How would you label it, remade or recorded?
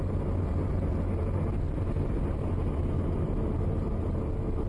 recorded